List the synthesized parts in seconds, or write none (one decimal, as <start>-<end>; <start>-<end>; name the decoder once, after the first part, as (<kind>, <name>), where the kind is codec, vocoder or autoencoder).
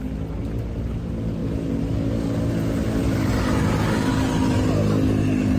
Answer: none